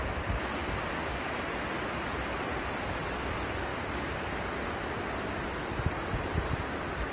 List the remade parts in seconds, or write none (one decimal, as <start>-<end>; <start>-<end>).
none